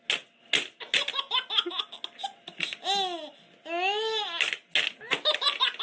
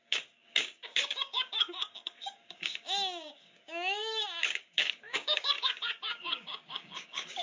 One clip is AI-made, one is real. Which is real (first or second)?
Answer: first